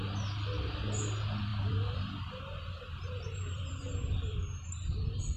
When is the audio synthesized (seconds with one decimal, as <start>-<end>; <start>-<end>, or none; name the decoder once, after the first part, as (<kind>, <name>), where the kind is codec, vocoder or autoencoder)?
1.5-4.7 (vocoder, BigVGAN v2)